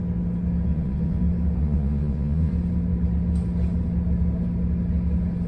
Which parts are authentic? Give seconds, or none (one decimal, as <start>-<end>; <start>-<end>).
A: 0.0-0.7; 1.2-1.6; 2.5-5.5